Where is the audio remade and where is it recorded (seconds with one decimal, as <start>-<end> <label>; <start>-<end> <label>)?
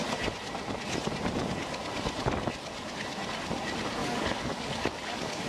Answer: 0.0-4.0 recorded; 4.0-5.5 remade